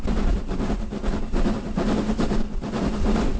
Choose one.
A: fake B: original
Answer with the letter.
B